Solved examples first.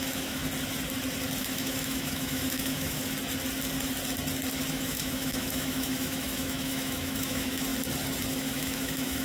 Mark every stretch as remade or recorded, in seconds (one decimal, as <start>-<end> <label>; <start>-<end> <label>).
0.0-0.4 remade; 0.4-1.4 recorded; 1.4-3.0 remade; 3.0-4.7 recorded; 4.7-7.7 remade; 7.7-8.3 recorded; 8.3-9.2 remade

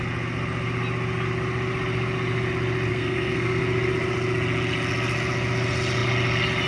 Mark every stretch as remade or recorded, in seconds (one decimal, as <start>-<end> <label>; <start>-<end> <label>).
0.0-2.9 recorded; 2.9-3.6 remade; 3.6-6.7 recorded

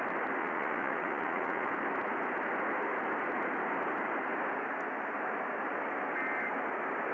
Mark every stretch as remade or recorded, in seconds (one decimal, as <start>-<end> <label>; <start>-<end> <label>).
0.0-0.4 recorded; 0.4-1.7 remade; 1.7-7.1 recorded